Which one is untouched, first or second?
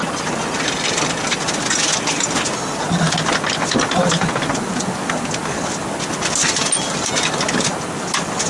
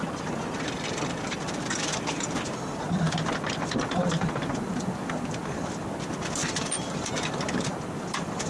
first